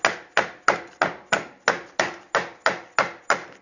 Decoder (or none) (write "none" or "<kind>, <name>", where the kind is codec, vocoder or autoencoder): none